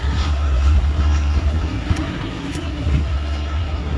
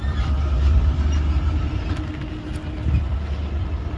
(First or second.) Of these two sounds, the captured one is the second